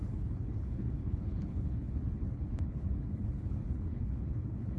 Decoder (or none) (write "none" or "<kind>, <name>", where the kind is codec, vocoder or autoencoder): codec, HILCodec